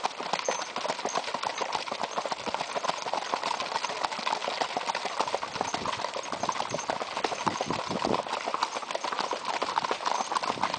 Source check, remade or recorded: recorded